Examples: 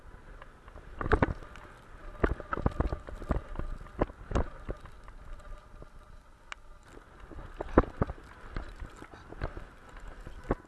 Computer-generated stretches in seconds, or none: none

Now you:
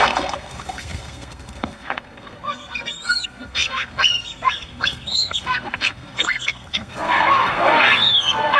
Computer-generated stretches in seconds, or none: 0.0-8.6 (codec, SNAC)

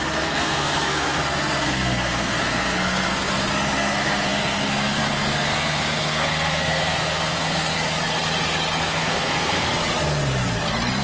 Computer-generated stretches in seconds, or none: 0.0-7.7 (codec, SNAC); 8.8-9.7

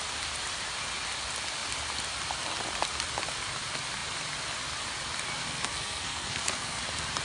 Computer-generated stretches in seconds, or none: 5.4-6.8 (codec, SNAC)

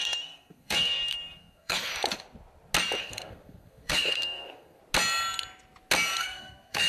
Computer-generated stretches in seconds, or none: 0.0-1.9 (codec, SNAC); 3.0-4.8; 6.2-6.9

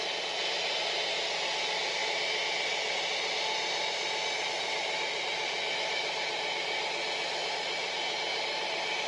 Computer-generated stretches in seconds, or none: none

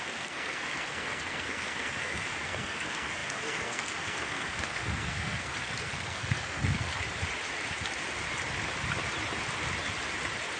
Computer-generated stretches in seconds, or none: 0.0-6.9 (codec, SNAC)